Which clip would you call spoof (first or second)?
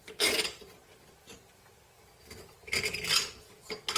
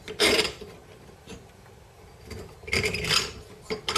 second